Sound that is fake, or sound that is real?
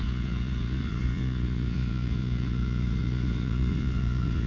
fake